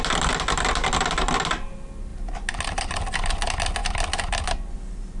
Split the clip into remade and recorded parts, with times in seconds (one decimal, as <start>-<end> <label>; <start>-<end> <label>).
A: 0.0-5.2 recorded